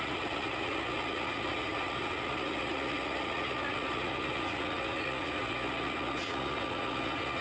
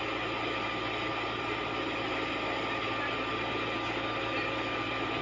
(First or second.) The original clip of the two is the second